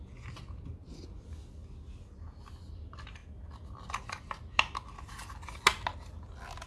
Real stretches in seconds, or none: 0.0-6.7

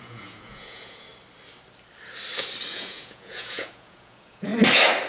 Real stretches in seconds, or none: 1.1-2.7; 4.5-5.1

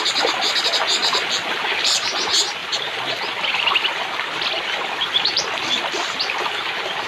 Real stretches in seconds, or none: 0.0-1.0; 2.1-2.6

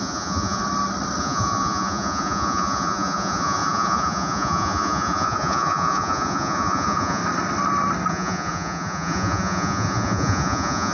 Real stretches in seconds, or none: 0.6-1.2; 7.2-8.1

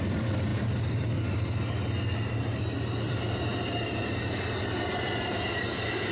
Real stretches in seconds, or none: 0.5-3.1; 3.5-4.6

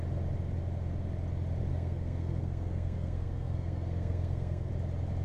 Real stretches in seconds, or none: 0.0-1.7; 4.7-5.2